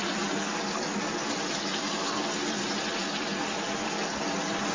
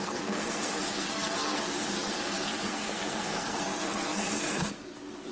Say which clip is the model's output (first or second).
second